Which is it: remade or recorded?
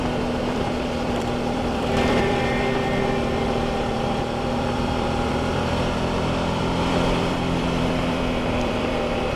remade